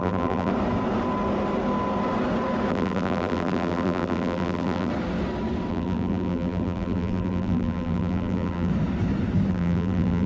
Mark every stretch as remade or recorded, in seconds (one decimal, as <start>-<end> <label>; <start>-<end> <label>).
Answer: 0.0-0.5 remade; 0.5-2.7 recorded; 2.7-4.9 remade; 4.9-5.7 recorded; 5.7-8.7 remade; 8.7-9.5 recorded; 9.5-10.3 remade